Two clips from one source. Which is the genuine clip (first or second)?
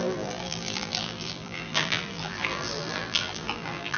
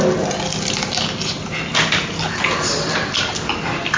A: second